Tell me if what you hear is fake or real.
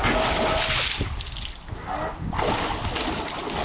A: real